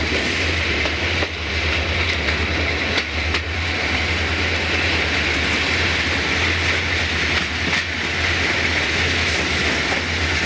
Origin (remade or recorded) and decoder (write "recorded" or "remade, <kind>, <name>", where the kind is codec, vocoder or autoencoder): recorded